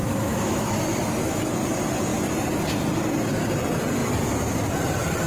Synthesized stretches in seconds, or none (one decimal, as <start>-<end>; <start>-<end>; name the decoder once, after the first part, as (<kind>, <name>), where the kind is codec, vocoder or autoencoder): 0.0-0.7 (autoencoder, DAC-VAE)